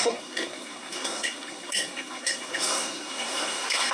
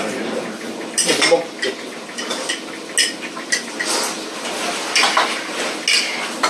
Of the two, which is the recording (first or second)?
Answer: second